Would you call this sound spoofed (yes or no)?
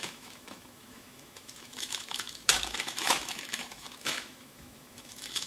yes